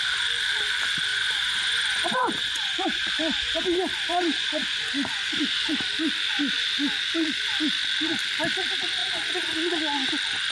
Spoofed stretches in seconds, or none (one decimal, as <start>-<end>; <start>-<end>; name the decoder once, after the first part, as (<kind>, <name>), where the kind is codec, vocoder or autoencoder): 1.1-5.7 (vocoder, Vocos); 9.0-9.6